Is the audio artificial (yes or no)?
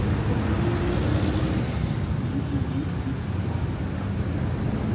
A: no